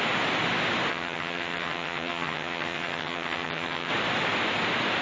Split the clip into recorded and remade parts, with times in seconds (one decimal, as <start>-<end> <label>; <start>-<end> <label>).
0.0-0.9 recorded; 0.9-3.9 remade; 3.9-5.0 recorded